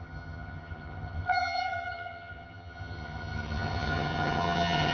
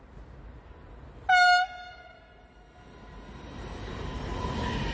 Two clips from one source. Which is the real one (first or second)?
second